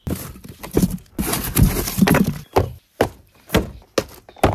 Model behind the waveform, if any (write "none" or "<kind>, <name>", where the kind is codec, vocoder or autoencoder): none